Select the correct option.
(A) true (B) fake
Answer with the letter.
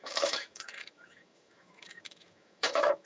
B